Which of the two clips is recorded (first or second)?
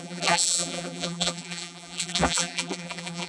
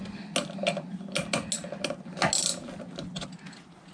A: second